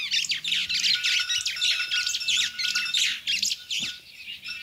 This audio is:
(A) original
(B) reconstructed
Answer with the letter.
A